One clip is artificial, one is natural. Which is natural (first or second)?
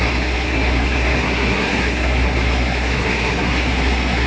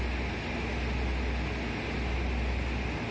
second